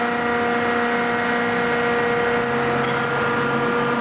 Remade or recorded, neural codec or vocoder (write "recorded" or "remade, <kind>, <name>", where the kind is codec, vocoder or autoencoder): recorded